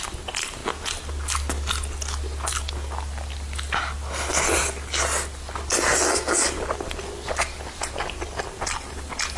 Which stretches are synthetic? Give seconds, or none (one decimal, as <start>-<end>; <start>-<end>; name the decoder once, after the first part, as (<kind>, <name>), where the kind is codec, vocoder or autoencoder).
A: none